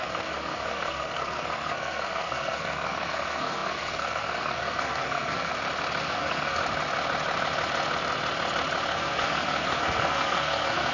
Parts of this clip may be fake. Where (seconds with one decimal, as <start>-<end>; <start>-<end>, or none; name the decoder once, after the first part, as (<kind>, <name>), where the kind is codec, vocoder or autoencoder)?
0.0-5.5 (codec, SNAC); 6.0-6.6; 8.9-10.9